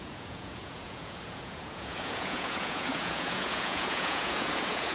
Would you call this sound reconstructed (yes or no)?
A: yes